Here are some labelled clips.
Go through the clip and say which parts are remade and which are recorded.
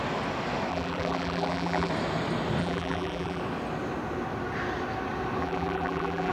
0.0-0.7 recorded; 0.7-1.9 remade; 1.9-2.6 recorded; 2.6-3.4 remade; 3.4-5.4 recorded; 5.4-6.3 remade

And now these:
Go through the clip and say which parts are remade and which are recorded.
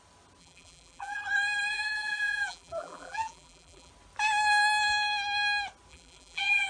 0.0-0.4 recorded; 0.4-1.2 remade; 1.2-1.7 recorded; 1.7-3.9 remade; 3.9-5.9 recorded; 5.9-6.7 remade